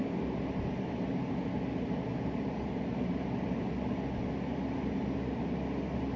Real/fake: real